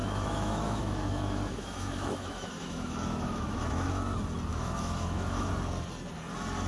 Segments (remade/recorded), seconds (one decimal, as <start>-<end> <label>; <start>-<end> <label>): 0.0-4.0 remade; 4.0-4.5 recorded; 4.5-5.5 remade; 5.5-6.7 recorded